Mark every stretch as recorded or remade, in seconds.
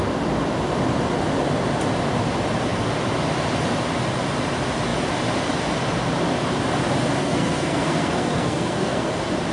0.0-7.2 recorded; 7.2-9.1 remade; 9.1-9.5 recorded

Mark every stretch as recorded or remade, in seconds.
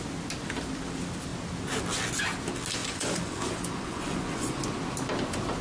0.0-2.8 recorded; 2.8-4.6 remade; 4.6-5.6 recorded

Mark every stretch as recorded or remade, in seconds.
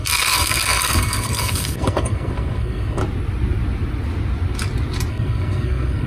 0.0-3.0 remade; 3.0-5.1 recorded; 5.1-6.1 remade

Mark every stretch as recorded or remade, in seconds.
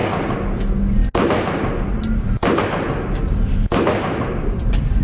0.0-2.6 recorded; 2.6-3.2 remade; 3.2-5.0 recorded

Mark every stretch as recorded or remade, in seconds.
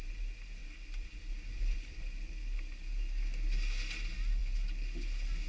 0.0-0.6 recorded; 0.6-2.3 remade; 2.3-5.5 recorded